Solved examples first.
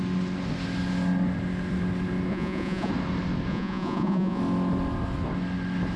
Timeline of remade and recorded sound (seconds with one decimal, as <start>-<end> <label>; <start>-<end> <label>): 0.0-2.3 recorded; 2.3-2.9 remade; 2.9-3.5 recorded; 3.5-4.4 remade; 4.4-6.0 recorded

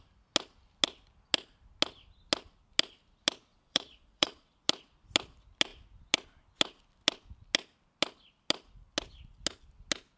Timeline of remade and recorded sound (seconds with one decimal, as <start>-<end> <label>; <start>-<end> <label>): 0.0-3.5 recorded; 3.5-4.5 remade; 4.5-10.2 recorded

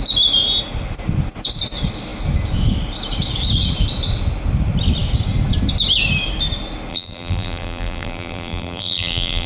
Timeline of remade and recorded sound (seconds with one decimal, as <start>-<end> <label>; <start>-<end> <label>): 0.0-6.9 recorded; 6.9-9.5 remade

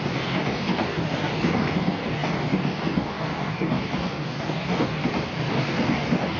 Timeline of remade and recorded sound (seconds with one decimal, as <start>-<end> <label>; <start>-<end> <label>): 0.0-5.0 remade; 5.0-5.5 recorded; 5.5-6.4 remade

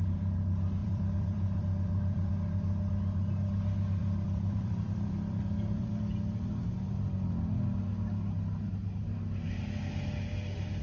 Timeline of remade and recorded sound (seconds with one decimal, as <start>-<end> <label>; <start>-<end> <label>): 0.0-0.8 recorded; 0.8-2.3 remade; 2.3-4.0 recorded; 4.0-6.0 remade; 6.0-10.8 recorded

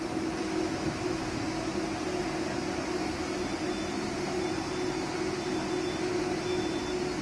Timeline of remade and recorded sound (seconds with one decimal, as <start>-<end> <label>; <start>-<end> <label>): 0.0-7.2 recorded